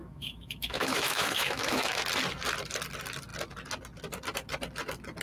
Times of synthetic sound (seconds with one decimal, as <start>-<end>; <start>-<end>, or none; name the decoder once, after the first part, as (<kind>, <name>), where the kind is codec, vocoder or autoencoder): 0.0-2.0 (autoencoder, DAC-VAE)